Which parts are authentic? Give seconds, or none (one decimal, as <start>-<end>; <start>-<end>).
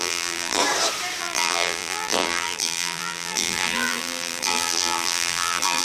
0.6-1.2